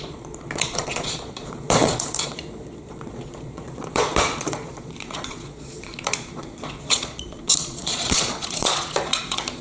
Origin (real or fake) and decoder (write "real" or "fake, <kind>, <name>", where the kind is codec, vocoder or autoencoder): fake, vocoder, Vocos